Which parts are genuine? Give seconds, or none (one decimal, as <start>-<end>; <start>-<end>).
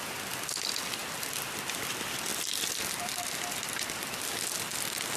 0.0-5.2